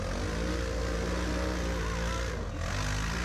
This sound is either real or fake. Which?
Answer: real